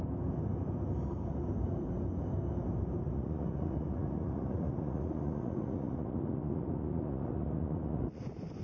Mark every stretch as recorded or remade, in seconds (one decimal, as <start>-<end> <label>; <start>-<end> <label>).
0.0-3.0 recorded; 3.0-8.2 remade; 8.2-8.6 recorded

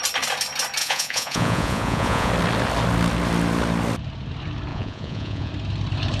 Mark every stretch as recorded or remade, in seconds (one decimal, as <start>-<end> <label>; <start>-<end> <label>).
0.0-0.8 recorded; 0.8-2.3 remade; 2.3-4.7 recorded; 4.7-5.5 remade; 5.5-6.2 recorded

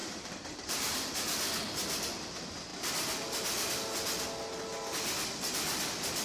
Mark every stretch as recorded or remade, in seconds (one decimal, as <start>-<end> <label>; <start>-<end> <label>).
0.0-1.1 remade; 1.1-6.2 recorded

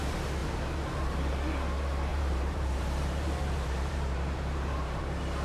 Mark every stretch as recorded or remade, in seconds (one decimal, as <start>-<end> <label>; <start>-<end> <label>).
0.0-0.4 recorded; 0.4-1.3 remade; 1.3-2.1 recorded; 2.1-5.0 remade; 5.0-5.4 recorded